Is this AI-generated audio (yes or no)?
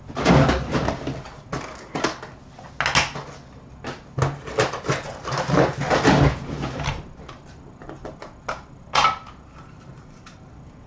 no